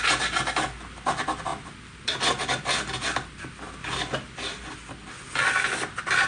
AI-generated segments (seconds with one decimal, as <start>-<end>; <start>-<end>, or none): none